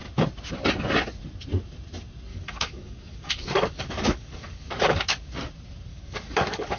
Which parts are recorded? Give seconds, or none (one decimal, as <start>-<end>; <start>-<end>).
0.0-2.3; 5.3-5.9